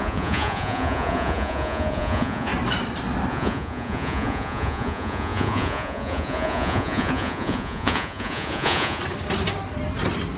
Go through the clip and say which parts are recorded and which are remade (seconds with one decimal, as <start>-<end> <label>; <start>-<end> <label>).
0.0-2.5 remade; 2.5-3.3 recorded; 3.3-9.0 remade; 9.0-10.4 recorded